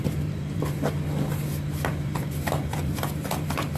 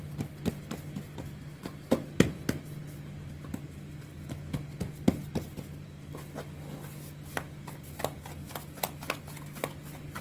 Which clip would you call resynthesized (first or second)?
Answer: first